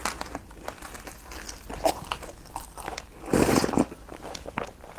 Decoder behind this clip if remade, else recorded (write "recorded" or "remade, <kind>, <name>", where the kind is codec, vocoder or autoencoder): recorded